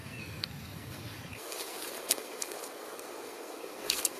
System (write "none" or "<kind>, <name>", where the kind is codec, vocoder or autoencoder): codec, SNAC